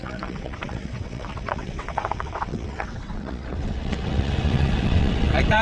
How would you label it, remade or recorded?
remade